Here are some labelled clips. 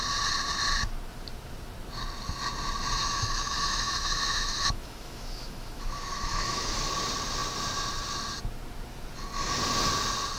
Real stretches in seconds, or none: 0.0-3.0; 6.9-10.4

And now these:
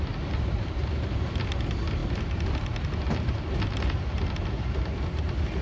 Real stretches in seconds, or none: 0.0-5.6

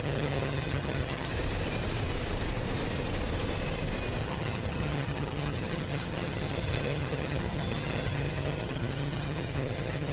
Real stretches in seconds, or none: 1.3-4.2

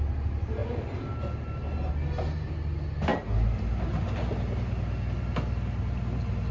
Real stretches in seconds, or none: 0.0-6.5